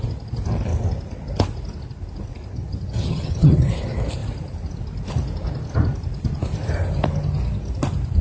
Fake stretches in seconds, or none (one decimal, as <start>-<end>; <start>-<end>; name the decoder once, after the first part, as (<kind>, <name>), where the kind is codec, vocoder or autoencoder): 2.5-3.7 (vocoder, HiFi-GAN)